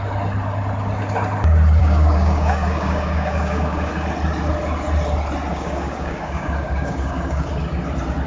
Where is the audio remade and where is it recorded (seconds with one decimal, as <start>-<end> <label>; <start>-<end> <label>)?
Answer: 0.0-1.8 recorded; 1.8-3.9 remade; 3.9-5.5 recorded; 5.5-7.5 remade; 7.5-8.3 recorded